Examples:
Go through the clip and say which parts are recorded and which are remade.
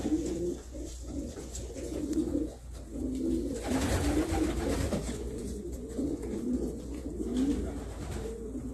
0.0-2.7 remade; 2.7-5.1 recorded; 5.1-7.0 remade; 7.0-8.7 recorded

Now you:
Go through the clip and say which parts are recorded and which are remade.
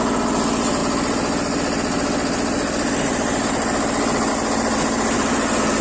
0.0-5.8 recorded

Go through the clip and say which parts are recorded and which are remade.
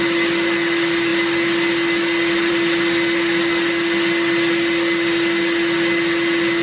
0.0-6.6 recorded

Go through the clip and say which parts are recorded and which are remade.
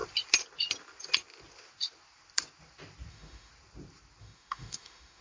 0.0-3.1 recorded; 3.1-3.5 remade; 3.5-4.2 recorded; 4.2-5.2 remade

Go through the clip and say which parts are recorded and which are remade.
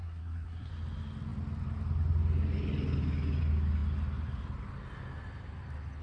0.0-0.7 remade; 0.7-6.0 recorded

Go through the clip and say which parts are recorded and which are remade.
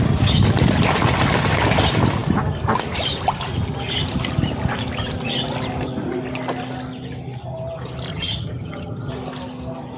0.0-8.1 recorded; 8.1-9.1 remade; 9.1-10.0 recorded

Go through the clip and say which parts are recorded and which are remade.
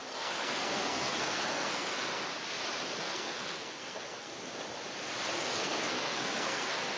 0.0-2.3 remade; 2.3-3.0 recorded; 3.0-4.3 remade; 4.3-5.4 recorded; 5.4-7.0 remade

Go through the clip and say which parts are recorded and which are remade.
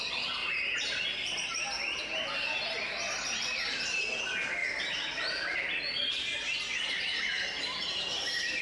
0.0-0.4 recorded; 0.4-4.1 remade; 4.1-4.6 recorded; 4.6-8.0 remade; 8.0-8.6 recorded